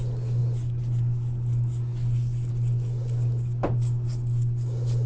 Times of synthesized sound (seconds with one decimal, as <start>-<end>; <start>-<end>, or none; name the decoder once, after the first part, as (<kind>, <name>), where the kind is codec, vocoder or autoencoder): none